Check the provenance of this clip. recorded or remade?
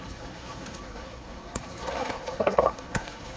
remade